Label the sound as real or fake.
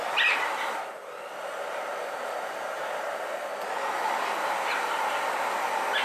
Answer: real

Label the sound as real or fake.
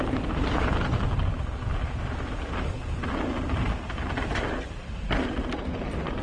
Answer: real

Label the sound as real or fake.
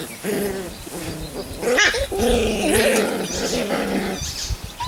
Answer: real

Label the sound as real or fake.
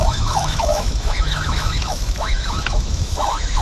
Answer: fake